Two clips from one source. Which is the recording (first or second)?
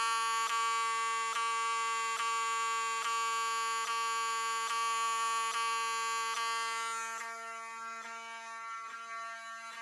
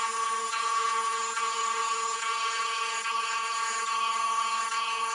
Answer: first